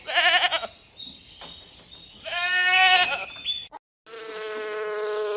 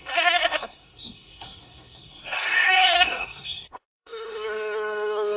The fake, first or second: second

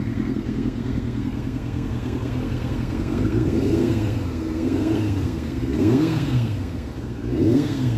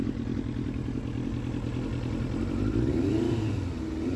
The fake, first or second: first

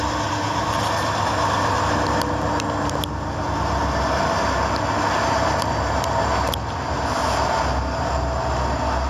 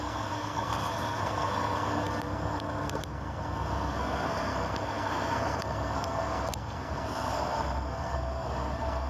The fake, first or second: second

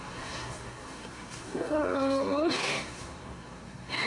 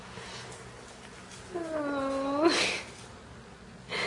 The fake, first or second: first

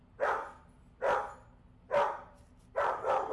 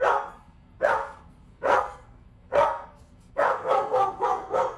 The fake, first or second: second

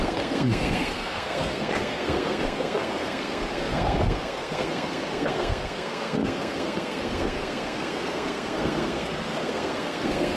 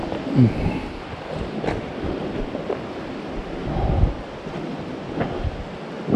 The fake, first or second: first